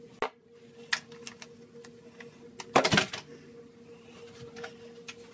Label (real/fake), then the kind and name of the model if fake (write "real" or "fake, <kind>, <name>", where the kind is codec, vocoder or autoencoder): real